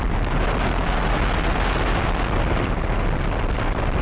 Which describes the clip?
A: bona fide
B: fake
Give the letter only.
A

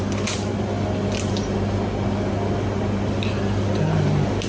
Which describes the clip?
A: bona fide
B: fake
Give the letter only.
A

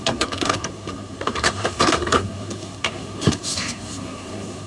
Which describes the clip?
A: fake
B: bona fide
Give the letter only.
A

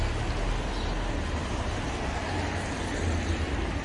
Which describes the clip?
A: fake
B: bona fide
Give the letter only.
B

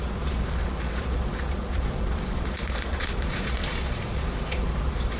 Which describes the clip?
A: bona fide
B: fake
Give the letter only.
B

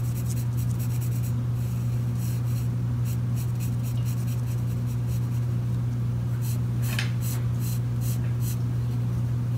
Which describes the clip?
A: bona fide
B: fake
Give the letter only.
A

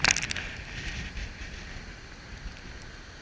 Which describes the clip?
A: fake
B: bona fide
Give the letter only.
B